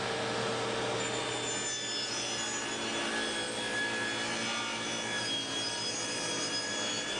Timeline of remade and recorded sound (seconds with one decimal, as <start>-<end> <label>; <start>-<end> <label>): 0.0-7.2 recorded